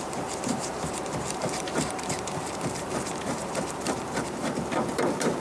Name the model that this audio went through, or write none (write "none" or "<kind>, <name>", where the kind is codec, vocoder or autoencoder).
vocoder, BigVGAN v2